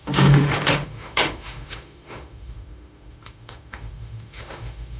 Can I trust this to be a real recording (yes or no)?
no